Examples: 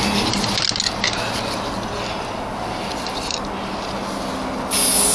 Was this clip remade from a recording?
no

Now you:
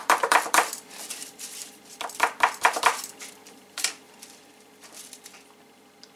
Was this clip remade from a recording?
yes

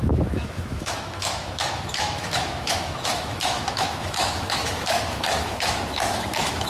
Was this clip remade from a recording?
yes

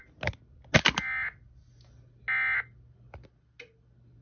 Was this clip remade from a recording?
no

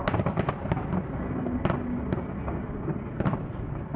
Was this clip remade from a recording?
no